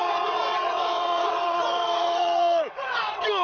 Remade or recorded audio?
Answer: remade